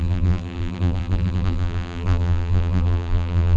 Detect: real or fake fake